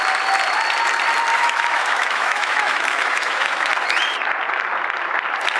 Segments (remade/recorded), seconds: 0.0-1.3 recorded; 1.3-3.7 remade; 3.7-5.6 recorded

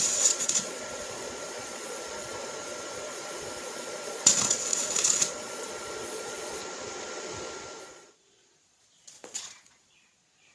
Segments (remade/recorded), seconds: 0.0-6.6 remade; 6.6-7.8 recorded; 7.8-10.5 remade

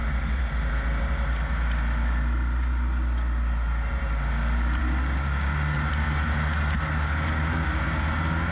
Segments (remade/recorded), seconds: 0.0-8.5 recorded

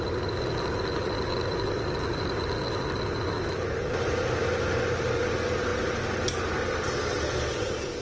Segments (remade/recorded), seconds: 0.0-8.0 recorded

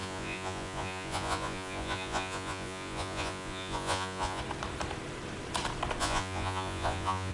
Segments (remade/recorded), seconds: 0.0-4.4 remade; 4.4-6.0 recorded; 6.0-7.3 remade

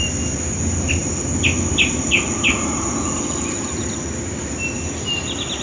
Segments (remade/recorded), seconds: 0.0-5.6 recorded

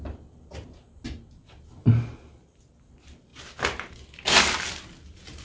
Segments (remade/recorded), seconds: 0.0-5.4 recorded